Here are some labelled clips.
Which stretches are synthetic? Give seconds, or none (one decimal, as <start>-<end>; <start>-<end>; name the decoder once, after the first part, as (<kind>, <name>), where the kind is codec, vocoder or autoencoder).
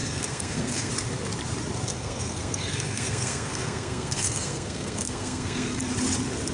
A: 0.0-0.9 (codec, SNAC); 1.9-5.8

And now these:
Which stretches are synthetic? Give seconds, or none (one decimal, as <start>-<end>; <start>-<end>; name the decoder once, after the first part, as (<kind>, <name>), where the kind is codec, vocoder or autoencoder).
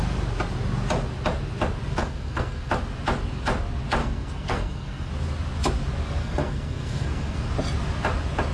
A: 2.0-2.7 (codec, SNAC); 4.0-5.1; 6.2-7.5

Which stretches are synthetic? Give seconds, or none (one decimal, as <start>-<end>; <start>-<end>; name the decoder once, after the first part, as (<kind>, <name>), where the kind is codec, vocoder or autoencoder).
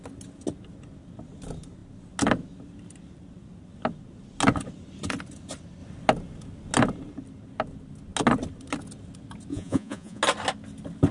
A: 9.5-10.2 (vocoder, Vocos)